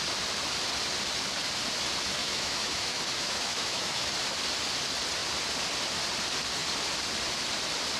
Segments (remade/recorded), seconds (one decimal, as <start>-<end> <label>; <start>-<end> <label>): 0.0-2.2 recorded; 2.2-4.1 remade; 4.1-8.0 recorded